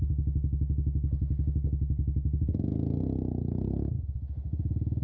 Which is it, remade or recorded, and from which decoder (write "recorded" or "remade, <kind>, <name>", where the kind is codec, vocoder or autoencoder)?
recorded